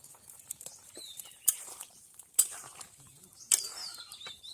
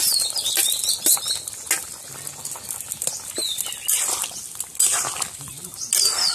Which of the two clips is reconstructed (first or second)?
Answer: first